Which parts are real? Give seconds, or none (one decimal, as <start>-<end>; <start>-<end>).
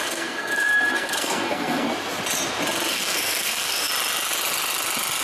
1.9-2.9; 3.9-5.2